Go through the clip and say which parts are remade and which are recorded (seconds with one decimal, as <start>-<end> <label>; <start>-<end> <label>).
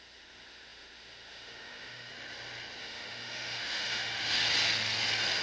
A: 0.0-2.1 remade; 2.1-2.8 recorded; 2.8-4.4 remade; 4.4-5.4 recorded